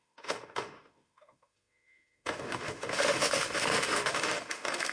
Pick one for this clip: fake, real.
fake